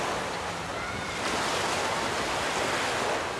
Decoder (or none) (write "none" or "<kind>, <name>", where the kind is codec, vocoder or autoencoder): none